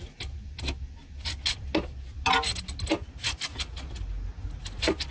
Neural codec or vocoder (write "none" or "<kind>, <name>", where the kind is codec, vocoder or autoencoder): none